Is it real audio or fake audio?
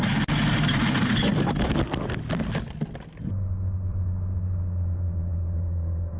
real